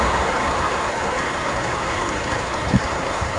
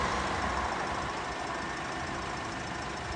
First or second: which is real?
second